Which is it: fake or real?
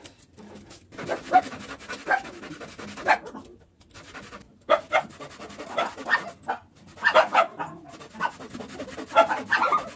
real